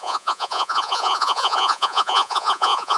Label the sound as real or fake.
fake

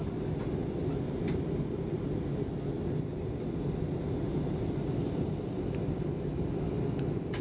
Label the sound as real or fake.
real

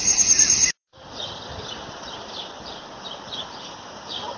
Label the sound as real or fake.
fake